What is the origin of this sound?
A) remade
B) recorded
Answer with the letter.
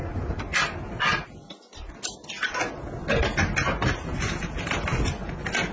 B